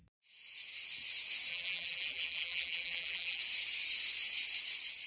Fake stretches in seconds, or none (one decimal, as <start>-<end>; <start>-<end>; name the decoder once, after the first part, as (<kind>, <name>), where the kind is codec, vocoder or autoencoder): 1.5-3.4 (vocoder, BigVGAN v2)

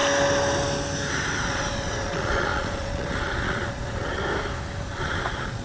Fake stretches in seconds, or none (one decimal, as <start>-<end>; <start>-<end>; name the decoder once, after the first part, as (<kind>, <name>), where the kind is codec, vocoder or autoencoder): 1.4-4.2 (vocoder, Vocos); 4.8-5.6

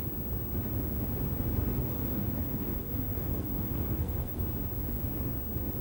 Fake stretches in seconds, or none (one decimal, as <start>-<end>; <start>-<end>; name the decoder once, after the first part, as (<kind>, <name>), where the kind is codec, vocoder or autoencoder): 1.8-4.4 (codec, SNAC)

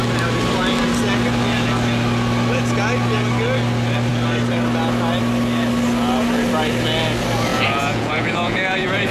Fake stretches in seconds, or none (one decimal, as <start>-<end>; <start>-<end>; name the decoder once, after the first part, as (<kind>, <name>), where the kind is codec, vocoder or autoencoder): 7.5-9.1 (vocoder, Vocos)

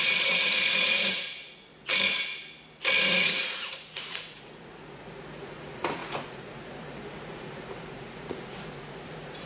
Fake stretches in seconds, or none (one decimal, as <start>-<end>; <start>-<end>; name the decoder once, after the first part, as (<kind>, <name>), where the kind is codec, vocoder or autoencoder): 0.0-1.7 (vocoder, Vocos); 3.0-9.5